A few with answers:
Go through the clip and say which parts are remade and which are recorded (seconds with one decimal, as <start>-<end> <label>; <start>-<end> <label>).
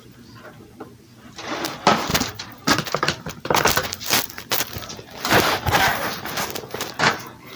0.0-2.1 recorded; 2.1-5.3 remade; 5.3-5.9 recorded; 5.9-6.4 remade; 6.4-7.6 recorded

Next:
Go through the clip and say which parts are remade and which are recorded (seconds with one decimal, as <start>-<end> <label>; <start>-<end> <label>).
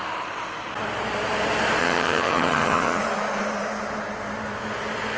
0.0-1.8 recorded; 1.8-3.0 remade; 3.0-5.2 recorded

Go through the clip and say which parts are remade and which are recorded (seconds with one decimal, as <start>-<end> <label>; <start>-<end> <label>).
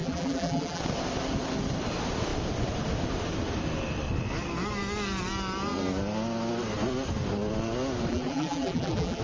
0.0-0.8 remade; 0.8-8.1 recorded; 8.1-9.2 remade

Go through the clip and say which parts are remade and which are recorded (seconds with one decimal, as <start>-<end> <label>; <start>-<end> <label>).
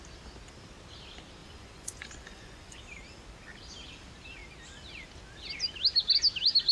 0.0-1.4 recorded; 1.4-2.8 remade; 2.8-6.7 recorded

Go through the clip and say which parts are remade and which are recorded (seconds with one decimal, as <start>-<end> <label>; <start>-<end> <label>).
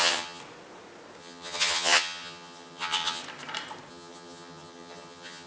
0.0-0.4 remade; 0.4-1.2 recorded; 1.2-3.2 remade; 3.2-3.9 recorded; 3.9-5.5 remade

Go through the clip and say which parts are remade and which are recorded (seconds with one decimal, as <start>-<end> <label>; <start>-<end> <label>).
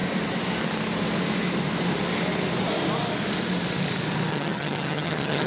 0.0-4.3 recorded; 4.3-5.5 remade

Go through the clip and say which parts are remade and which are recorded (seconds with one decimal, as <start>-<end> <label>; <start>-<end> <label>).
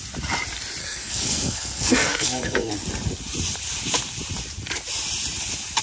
0.0-0.8 recorded; 0.8-2.7 remade; 2.7-5.8 recorded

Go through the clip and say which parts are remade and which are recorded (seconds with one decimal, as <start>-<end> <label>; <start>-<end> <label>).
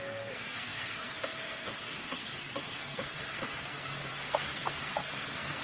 0.0-5.6 remade